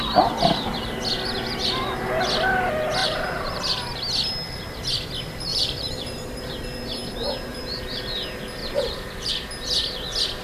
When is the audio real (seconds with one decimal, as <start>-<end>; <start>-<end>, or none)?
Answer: 0.0-3.0; 4.0-5.5; 6.4-7.5; 8.0-8.6; 9.3-10.4